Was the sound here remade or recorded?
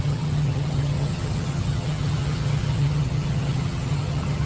remade